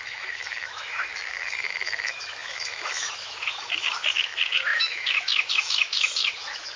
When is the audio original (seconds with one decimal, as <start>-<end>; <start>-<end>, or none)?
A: none